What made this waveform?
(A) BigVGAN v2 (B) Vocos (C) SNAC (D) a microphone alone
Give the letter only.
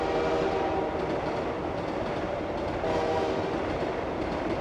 D